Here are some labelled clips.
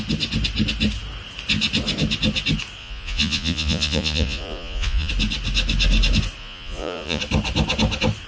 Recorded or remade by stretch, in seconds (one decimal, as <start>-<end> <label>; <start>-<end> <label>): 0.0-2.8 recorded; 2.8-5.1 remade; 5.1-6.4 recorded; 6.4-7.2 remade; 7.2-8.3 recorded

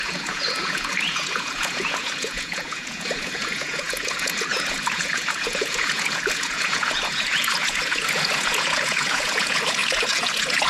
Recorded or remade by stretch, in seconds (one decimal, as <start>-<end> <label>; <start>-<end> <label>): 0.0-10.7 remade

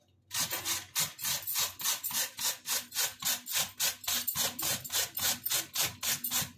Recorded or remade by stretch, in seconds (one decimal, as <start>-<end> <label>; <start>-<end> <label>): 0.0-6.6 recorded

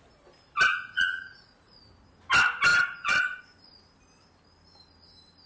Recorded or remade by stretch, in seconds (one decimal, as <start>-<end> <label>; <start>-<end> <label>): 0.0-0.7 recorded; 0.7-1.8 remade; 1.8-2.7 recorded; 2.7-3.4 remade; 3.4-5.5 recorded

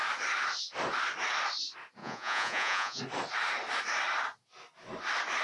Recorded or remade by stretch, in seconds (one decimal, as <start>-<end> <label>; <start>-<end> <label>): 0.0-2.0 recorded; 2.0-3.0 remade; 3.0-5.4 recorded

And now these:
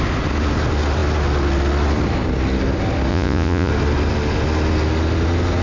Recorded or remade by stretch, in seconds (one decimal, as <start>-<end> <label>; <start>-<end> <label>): 0.0-3.1 recorded; 3.1-3.7 remade; 3.7-5.6 recorded